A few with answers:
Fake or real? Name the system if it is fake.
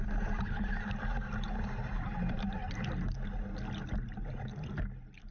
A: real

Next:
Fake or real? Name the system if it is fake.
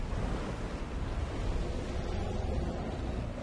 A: real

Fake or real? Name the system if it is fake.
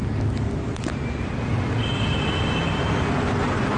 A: real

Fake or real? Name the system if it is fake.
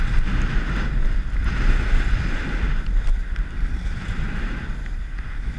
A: real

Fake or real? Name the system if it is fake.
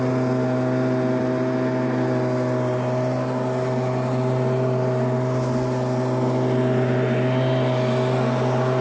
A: real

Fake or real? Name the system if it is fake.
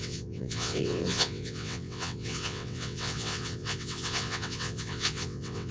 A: fake, vocoder, WaveNeXt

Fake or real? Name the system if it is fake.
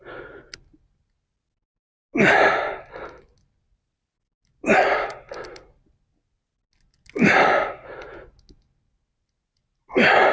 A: real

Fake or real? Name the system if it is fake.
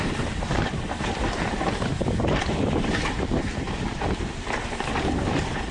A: fake, vocoder, BigVGAN v2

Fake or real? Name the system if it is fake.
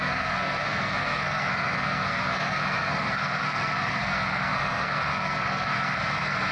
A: fake, codec, SNAC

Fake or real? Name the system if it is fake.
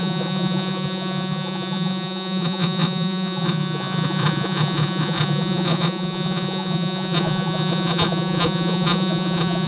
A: fake, vocoder, Vocos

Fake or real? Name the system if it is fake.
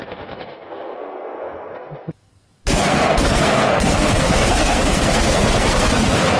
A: fake, codec, SNAC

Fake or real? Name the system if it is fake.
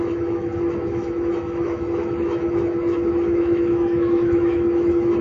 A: fake, autoencoder, DAC-VAE